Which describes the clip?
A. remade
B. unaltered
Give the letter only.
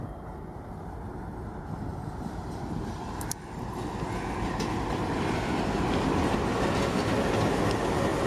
B